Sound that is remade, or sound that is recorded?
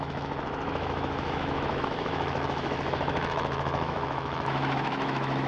remade